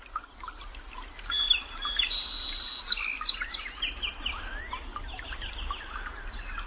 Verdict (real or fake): real